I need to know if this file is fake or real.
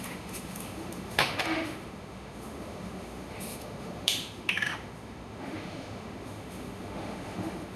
fake